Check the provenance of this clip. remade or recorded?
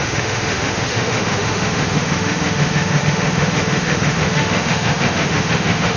remade